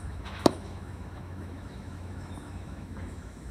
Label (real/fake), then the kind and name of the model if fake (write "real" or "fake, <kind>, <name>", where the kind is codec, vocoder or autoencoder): fake, autoencoder, DAC-VAE